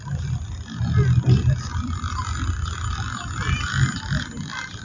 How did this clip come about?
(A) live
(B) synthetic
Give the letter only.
A